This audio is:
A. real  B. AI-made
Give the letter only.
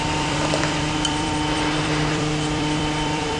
B